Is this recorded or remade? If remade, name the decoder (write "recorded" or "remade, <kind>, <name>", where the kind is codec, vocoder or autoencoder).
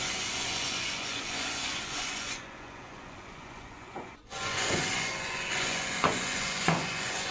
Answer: remade, vocoder, Vocos